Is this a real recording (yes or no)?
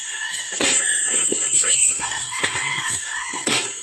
no